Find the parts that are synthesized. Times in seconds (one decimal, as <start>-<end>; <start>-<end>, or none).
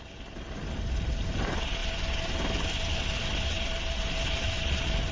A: none